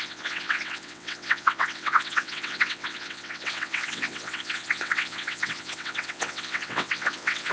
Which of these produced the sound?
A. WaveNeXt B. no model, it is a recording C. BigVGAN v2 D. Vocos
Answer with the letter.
A